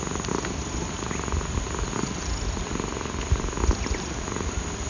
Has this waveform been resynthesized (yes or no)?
no